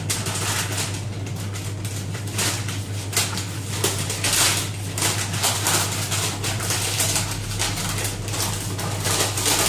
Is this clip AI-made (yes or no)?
no